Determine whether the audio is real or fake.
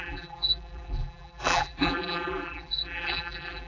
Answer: fake